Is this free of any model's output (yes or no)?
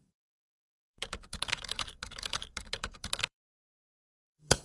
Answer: no